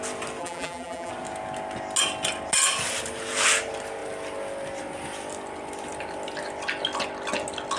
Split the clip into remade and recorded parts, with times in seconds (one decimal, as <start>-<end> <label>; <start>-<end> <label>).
0.0-0.4 recorded; 0.4-1.1 remade; 1.1-7.8 recorded